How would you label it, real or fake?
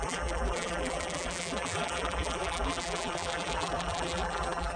fake